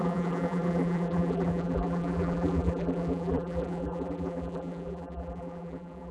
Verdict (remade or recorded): remade